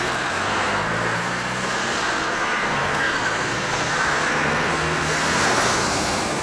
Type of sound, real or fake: fake